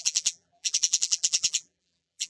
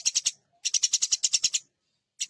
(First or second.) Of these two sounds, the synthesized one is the first